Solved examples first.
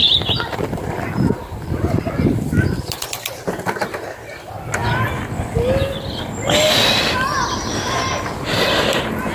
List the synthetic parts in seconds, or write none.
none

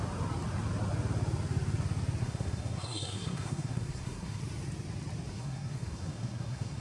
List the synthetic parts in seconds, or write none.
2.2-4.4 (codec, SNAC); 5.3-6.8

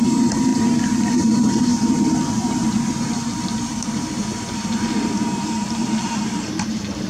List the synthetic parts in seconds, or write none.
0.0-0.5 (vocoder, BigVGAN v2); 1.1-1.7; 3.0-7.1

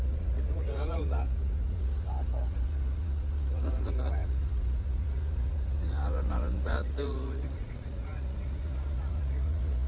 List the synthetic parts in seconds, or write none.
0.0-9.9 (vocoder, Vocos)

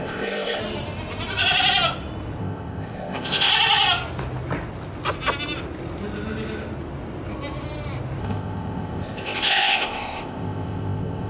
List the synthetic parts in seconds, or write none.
0.0-0.6 (codec, ZipCodec); 2.4-3.5; 8.2-11.3